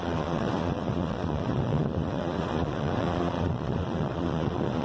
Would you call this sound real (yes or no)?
no